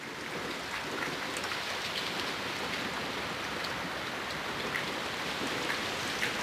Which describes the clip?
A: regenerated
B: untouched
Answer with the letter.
B